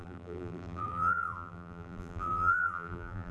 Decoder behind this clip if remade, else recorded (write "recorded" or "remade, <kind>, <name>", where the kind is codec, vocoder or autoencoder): remade, vocoder, BigVGAN v2